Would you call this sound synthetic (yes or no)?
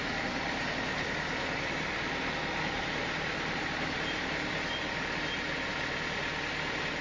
no